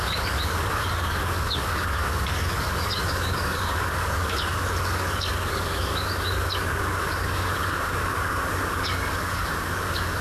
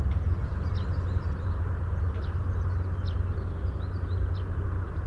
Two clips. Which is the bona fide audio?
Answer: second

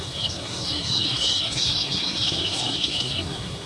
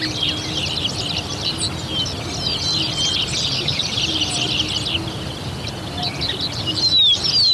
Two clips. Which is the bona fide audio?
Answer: second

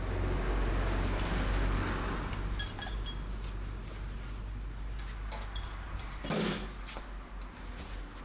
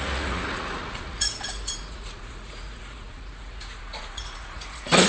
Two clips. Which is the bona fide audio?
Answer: first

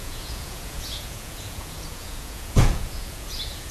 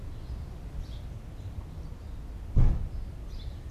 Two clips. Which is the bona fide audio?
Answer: second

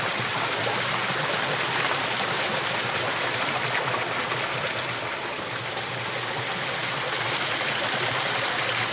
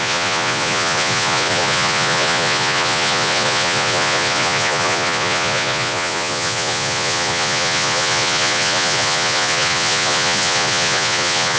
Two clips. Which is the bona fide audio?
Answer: first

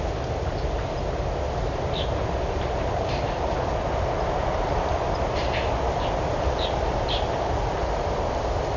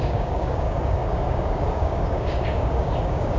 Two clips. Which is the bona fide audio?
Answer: first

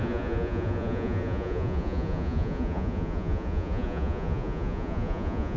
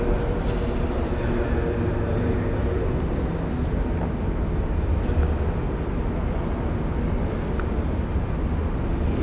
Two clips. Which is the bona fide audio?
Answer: second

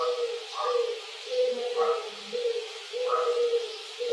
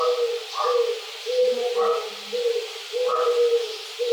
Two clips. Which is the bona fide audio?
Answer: second